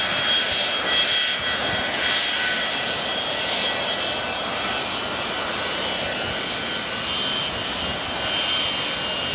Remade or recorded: recorded